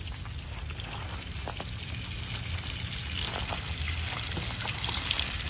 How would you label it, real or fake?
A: real